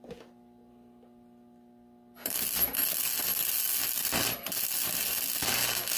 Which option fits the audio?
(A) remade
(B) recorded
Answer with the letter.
B